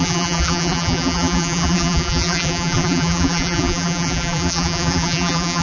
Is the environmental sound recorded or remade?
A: remade